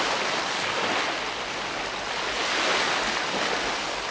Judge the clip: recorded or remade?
recorded